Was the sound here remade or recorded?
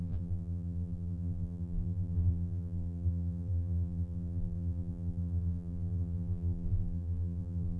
remade